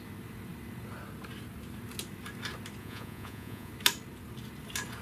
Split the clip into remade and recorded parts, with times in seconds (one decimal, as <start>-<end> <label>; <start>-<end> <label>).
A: 0.0-2.8 recorded; 2.8-3.7 remade; 3.7-5.0 recorded

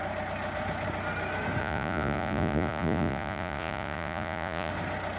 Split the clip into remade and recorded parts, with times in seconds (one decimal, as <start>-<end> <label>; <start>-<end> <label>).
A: 0.0-1.6 recorded; 1.6-4.7 remade; 4.7-5.2 recorded

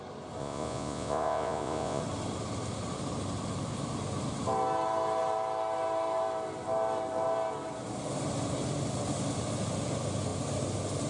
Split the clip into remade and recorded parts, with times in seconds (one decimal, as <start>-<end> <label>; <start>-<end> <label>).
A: 0.0-0.4 recorded; 0.4-2.0 remade; 2.0-11.1 recorded